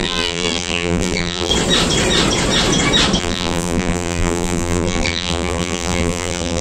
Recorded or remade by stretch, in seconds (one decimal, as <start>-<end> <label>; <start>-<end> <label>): 0.0-1.5 remade; 1.5-3.2 recorded; 3.2-6.6 remade